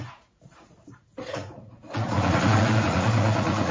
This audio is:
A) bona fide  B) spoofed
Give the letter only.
B